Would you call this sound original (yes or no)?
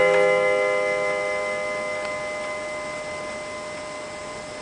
yes